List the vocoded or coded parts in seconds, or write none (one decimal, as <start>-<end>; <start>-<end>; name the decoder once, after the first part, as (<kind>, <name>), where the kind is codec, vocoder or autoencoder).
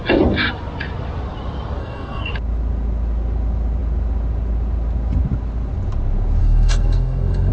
1.8-2.3 (codec, SNAC); 6.4-7.5